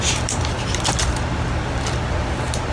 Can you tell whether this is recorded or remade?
remade